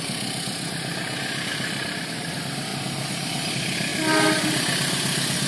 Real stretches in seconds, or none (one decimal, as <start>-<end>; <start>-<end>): 0.0-1.5; 2.1-5.5